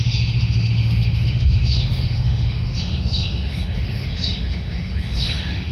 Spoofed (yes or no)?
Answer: yes